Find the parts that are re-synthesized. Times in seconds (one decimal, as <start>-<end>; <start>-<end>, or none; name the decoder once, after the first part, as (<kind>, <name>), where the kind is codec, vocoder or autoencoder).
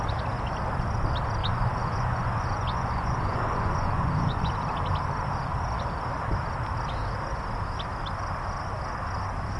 1.4-4.5 (vocoder, Vocos)